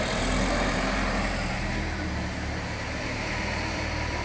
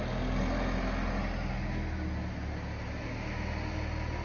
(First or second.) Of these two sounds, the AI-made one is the first